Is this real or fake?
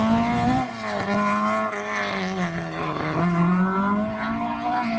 real